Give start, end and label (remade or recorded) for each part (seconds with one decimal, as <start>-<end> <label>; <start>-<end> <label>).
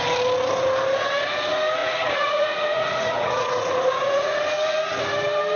0.0-1.8 recorded; 1.8-4.4 remade; 4.4-5.6 recorded